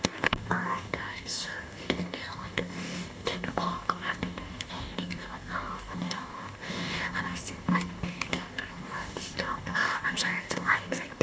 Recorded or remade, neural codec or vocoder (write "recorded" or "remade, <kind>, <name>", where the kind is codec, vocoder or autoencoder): remade, codec, DAC